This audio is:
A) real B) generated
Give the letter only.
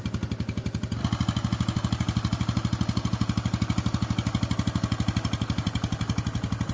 A